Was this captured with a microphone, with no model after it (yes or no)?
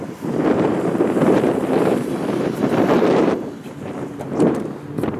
no